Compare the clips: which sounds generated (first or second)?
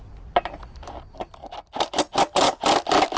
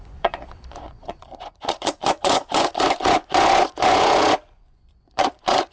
second